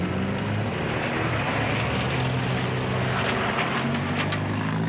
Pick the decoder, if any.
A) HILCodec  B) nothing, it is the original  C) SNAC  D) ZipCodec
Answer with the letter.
B